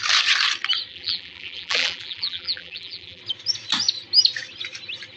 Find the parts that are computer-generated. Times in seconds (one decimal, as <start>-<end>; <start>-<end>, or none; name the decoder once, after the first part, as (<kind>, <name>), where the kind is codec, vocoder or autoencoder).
0.9-3.2 (vocoder, BigVGAN v2)